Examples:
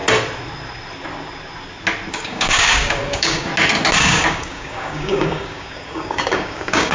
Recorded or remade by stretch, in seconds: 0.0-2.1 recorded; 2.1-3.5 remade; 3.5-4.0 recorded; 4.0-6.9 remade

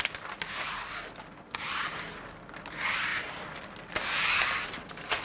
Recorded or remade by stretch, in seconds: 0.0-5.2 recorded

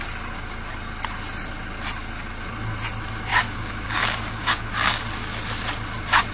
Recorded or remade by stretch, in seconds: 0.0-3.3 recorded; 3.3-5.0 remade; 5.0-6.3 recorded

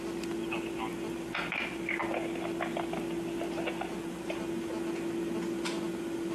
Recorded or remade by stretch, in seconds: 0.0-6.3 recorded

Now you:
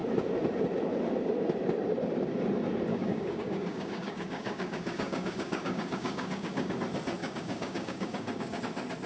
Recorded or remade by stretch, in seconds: 0.0-2.9 recorded; 2.9-6.7 remade; 6.7-7.2 recorded; 7.2-8.6 remade; 8.6-9.1 recorded

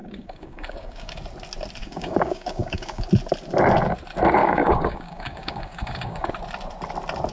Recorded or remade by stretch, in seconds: 0.0-1.2 remade; 1.2-1.8 recorded; 1.8-3.0 remade; 3.0-4.4 recorded; 4.4-6.3 remade; 6.3-7.3 recorded